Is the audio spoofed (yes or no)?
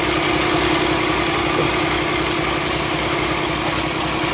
no